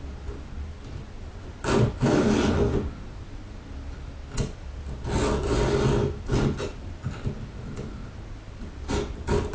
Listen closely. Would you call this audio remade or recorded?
recorded